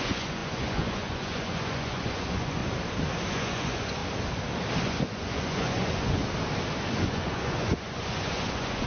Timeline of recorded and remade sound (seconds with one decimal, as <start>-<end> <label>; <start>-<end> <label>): 0.0-2.6 remade; 2.6-3.3 recorded; 3.3-4.0 remade; 4.0-4.8 recorded; 4.8-6.2 remade; 6.2-6.9 recorded; 6.9-8.9 remade